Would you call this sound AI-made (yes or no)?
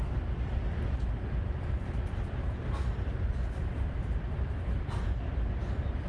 yes